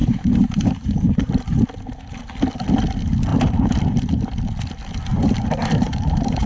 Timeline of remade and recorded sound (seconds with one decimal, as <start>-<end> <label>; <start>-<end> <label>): 0.0-1.4 remade; 1.4-3.3 recorded; 3.3-3.8 remade; 3.8-5.1 recorded; 5.1-6.5 remade